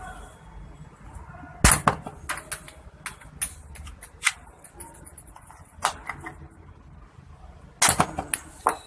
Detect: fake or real real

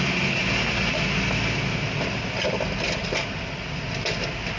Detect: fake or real real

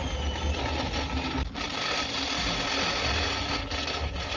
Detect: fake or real real